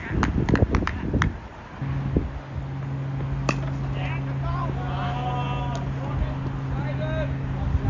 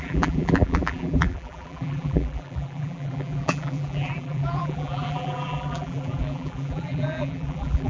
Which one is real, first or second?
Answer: first